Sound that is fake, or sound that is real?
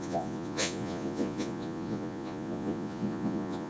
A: fake